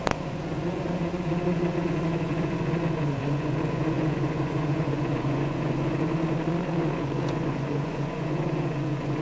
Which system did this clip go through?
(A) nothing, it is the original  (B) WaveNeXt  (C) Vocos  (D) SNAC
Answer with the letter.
C